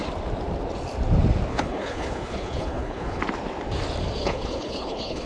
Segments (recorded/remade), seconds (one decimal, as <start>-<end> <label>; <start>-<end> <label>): 0.0-1.5 recorded; 1.5-3.2 remade; 3.2-4.2 recorded; 4.2-5.3 remade

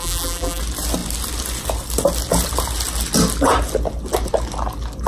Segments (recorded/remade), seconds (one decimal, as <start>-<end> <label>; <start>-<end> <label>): 0.0-0.6 remade; 0.6-5.1 recorded

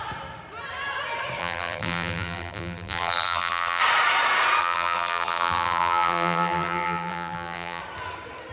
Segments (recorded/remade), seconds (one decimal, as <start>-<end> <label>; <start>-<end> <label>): 0.0-1.4 recorded; 1.4-3.8 remade; 3.8-4.6 recorded; 4.6-7.8 remade; 7.8-8.5 recorded

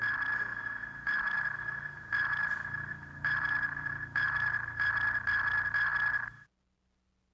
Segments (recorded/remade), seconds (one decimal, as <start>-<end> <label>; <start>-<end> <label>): 0.0-0.5 recorded; 0.5-4.9 remade; 4.9-7.3 recorded

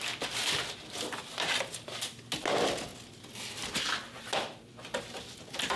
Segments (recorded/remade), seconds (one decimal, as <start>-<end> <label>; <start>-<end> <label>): 0.0-5.8 recorded

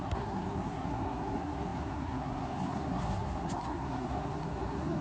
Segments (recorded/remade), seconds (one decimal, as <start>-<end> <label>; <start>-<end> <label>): 0.0-5.0 remade

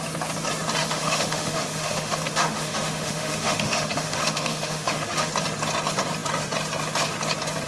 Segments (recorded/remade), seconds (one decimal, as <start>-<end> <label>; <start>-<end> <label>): 0.0-0.8 recorded; 0.8-5.3 remade; 5.3-7.7 recorded